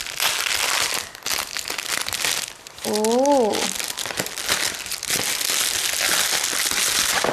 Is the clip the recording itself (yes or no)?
yes